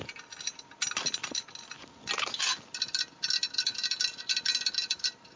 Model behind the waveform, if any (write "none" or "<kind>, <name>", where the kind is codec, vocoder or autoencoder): none